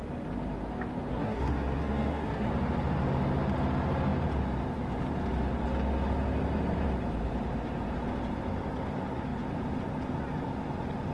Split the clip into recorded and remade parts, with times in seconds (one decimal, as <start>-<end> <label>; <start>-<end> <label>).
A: 0.0-1.1 recorded; 1.1-2.5 remade; 2.5-11.1 recorded